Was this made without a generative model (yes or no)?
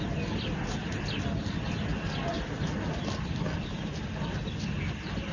yes